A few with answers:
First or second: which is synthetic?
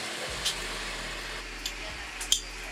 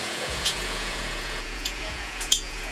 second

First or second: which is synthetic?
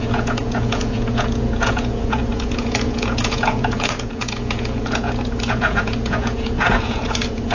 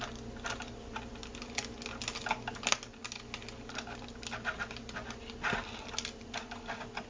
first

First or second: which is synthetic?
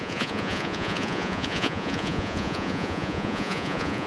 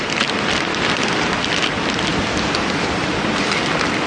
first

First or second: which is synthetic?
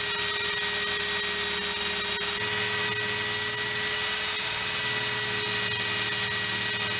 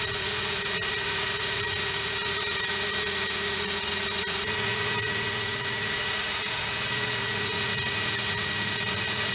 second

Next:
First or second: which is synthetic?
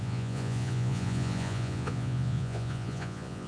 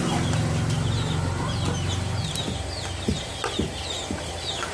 first